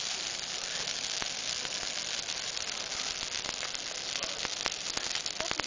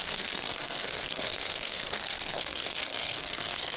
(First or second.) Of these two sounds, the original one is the first